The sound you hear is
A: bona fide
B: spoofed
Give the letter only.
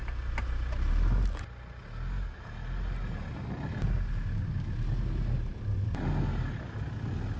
A